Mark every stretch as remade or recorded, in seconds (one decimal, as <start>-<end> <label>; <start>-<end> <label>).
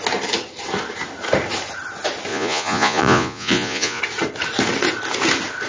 0.0-2.3 recorded; 2.3-4.0 remade; 4.0-5.7 recorded